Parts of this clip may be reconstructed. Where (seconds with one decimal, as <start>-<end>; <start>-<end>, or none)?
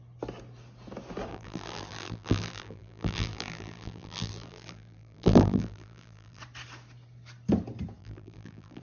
1.3-6.4; 8.0-8.8